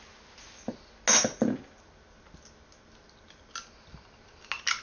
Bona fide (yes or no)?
yes